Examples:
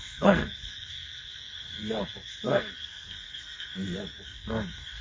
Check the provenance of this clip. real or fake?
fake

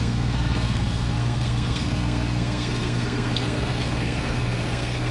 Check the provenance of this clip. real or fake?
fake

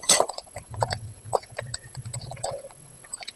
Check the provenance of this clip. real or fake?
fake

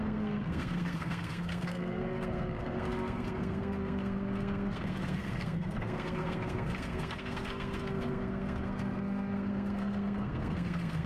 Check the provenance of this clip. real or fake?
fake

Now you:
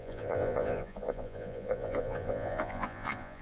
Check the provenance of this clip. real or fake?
fake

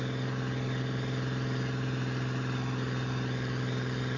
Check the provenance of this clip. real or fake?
real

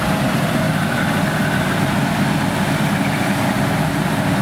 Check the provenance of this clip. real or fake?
real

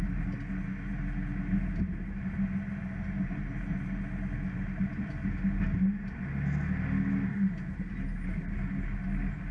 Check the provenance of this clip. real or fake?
real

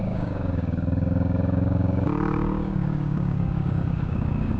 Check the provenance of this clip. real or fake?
fake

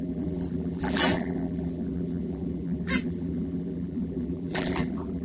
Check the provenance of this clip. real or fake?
fake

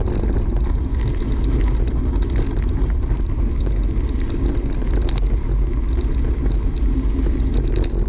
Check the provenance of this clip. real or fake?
real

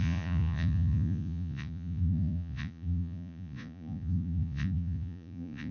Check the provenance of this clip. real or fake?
fake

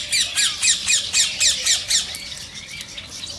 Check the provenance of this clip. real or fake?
real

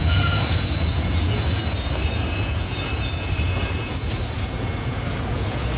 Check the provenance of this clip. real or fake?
fake